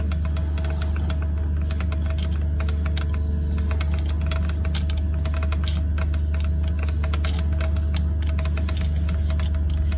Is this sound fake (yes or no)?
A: no